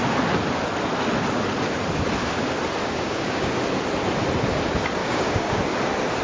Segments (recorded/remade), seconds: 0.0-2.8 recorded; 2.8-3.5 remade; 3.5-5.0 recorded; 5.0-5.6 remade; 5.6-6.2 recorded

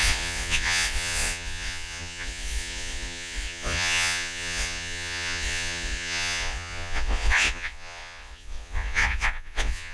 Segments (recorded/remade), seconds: 0.0-9.9 remade

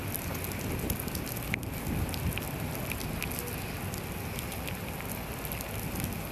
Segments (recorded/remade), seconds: 0.0-6.3 recorded

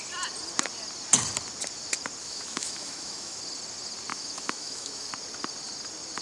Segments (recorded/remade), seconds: 0.0-2.2 recorded; 2.2-3.4 remade; 3.4-4.1 recorded; 4.1-5.1 remade; 5.1-6.2 recorded

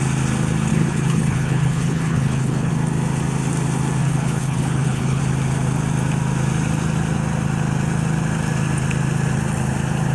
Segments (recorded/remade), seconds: 0.0-0.7 recorded; 0.7-2.7 remade; 2.7-4.0 recorded; 4.0-5.2 remade; 5.2-10.1 recorded